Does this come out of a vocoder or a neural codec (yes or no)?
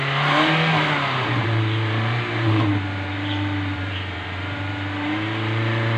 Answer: yes